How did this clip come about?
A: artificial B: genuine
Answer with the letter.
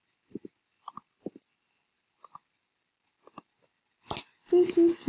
B